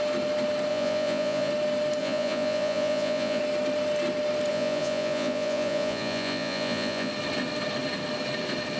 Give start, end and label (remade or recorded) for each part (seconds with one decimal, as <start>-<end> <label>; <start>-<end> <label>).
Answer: 0.0-0.7 recorded; 0.7-1.5 remade; 1.5-2.0 recorded; 2.0-3.4 remade; 3.4-4.5 recorded; 4.5-7.1 remade; 7.1-8.8 recorded